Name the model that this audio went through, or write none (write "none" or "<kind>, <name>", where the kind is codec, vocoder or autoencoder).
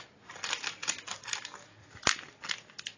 none